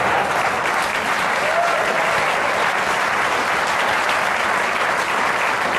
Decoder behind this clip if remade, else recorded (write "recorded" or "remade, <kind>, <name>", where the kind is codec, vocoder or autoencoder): recorded